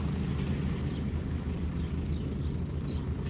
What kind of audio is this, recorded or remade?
recorded